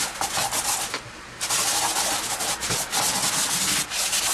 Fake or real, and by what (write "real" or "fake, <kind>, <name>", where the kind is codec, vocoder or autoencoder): real